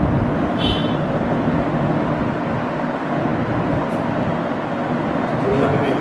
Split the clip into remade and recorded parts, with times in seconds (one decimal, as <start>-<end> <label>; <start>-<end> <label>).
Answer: 0.0-0.8 recorded; 0.8-2.5 remade; 2.5-6.0 recorded

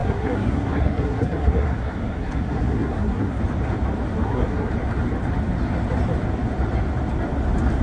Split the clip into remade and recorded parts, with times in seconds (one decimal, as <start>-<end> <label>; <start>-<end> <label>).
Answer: 0.0-3.4 remade; 3.4-4.2 recorded; 4.2-4.7 remade; 4.7-7.8 recorded

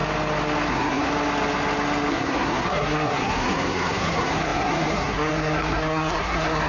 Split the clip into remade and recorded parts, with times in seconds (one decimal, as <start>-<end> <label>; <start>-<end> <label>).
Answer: 0.0-0.7 recorded; 0.7-1.1 remade; 1.1-2.1 recorded; 2.1-6.7 remade